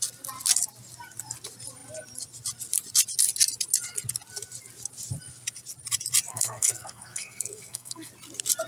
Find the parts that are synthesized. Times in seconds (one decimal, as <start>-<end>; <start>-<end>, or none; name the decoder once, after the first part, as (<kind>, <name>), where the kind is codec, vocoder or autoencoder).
6.3-8.1 (codec, SNAC)